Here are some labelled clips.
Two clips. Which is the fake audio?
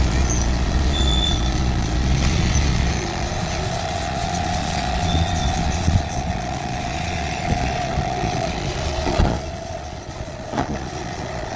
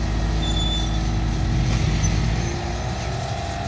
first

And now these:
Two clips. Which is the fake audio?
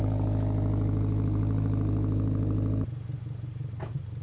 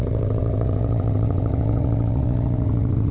second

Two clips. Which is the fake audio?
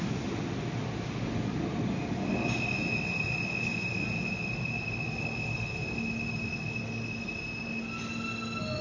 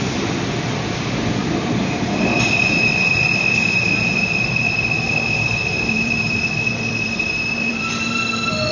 second